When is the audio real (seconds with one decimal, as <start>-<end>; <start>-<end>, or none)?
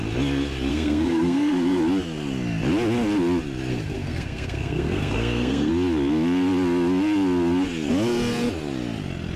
0.0-0.7; 1.8-3.7; 5.7-9.4